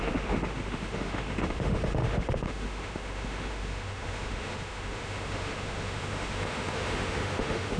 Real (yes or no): no